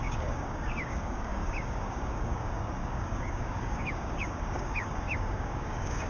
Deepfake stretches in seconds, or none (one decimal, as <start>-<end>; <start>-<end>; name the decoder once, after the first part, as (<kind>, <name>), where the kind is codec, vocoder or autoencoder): 0.0-6.1 (codec, DAC)